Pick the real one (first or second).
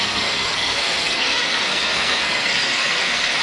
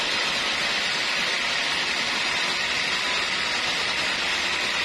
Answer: second